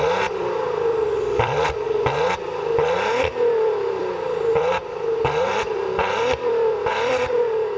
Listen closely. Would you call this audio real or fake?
fake